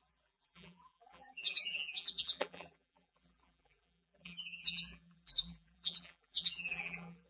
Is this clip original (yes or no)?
no